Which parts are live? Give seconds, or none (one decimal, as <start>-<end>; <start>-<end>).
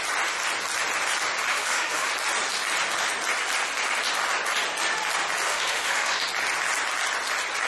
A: 0.0-1.5; 2.1-5.5; 6.2-7.7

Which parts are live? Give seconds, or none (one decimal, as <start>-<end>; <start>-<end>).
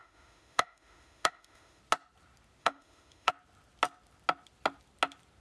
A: 1.8-2.6; 3.3-5.4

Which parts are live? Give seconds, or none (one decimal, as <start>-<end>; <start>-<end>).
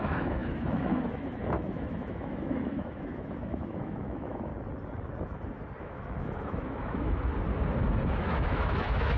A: 4.5-5.8; 7.3-8.0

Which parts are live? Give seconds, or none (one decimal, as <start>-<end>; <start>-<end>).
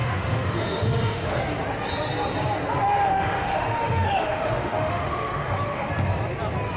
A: 1.4-3.1; 5.9-6.8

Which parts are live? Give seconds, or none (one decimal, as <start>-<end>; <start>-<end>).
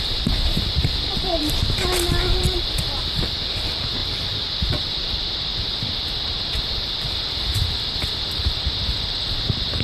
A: 0.0-9.8